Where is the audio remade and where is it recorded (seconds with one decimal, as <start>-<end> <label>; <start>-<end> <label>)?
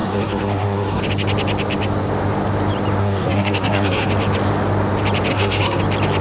0.0-1.0 remade; 1.0-3.0 recorded; 3.0-4.1 remade; 4.1-5.3 recorded; 5.3-5.8 remade; 5.8-6.2 recorded